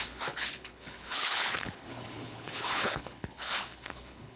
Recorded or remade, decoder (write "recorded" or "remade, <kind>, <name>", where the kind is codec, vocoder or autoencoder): remade, codec, HILCodec